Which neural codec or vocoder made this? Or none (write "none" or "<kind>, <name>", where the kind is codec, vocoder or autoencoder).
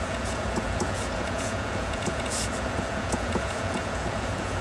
vocoder, Vocos